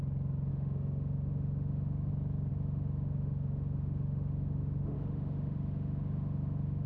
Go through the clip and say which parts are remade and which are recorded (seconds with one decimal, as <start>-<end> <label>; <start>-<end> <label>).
0.0-0.5 recorded; 0.5-2.1 remade; 2.1-2.5 recorded; 2.5-6.9 remade